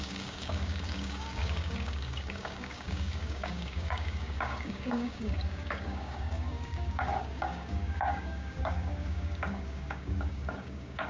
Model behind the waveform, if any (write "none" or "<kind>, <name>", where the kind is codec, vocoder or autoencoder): codec, DAC